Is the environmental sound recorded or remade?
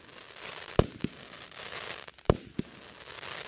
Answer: recorded